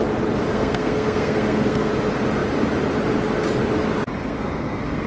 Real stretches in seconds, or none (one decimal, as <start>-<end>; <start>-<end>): 0.0-0.5; 1.9-4.2